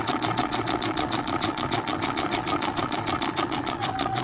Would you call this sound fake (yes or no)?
yes